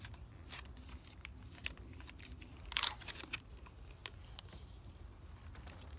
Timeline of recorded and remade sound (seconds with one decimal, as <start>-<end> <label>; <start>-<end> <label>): 0.0-6.0 recorded